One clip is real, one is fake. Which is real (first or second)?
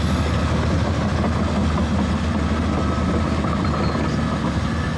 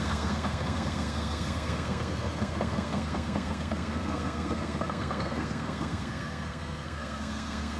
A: first